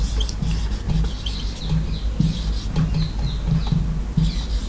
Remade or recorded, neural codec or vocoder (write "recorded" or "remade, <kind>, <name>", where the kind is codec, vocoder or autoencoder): recorded